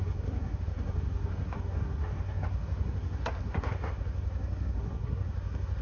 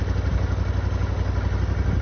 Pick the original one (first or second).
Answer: second